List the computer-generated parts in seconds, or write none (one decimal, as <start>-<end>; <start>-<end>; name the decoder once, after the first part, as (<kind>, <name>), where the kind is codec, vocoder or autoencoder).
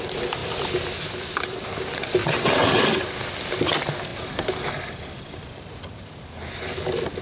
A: 2.2-2.8 (vocoder, WaveNeXt)